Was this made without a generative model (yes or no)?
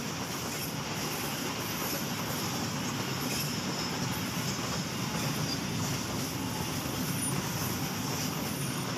yes